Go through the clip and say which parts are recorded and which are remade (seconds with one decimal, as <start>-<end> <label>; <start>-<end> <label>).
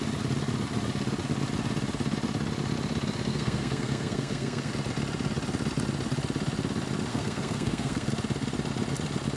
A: 0.0-3.3 recorded; 3.3-4.7 remade; 4.7-7.1 recorded; 7.1-8.1 remade; 8.1-9.4 recorded